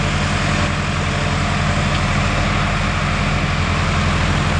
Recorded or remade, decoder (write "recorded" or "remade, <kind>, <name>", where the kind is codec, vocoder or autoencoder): recorded